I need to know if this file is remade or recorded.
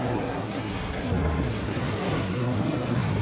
remade